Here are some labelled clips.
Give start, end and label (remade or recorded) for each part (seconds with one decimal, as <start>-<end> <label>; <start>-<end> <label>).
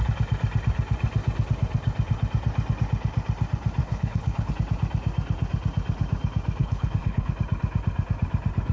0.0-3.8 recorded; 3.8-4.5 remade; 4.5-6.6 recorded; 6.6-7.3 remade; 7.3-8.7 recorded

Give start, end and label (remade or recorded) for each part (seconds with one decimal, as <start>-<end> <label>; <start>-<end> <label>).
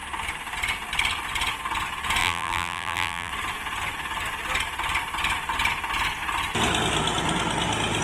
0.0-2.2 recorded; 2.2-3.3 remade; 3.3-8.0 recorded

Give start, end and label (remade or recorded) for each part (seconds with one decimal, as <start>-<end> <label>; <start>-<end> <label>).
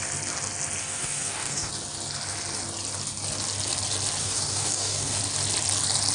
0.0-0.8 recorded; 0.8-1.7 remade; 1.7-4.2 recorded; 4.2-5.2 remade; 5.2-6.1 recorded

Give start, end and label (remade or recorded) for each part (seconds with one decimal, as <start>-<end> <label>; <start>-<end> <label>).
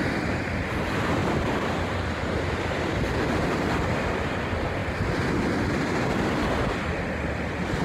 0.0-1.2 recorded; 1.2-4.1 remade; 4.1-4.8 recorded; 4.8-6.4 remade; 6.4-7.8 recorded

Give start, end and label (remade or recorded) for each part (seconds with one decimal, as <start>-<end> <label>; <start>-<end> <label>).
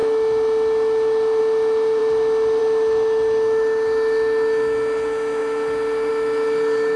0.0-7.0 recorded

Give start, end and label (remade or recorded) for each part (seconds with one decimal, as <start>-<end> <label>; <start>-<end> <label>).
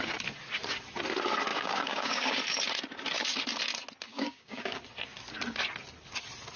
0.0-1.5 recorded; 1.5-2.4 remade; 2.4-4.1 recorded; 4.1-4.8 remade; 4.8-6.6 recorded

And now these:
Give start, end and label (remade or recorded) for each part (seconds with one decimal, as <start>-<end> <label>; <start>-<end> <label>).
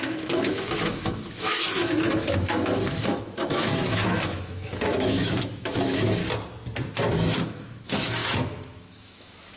0.0-6.2 remade; 6.2-7.1 recorded; 7.1-9.6 remade